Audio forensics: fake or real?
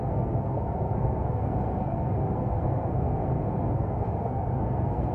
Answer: fake